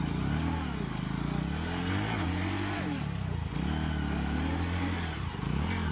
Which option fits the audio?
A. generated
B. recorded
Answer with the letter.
B